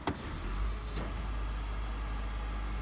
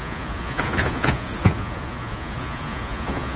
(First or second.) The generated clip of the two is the second